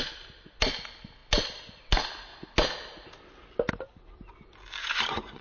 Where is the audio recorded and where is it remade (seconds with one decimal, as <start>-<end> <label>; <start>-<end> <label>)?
0.0-4.8 recorded; 4.8-5.4 remade